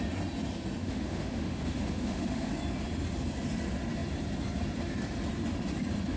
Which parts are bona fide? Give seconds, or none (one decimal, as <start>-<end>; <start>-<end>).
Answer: 0.0-0.8; 2.5-6.2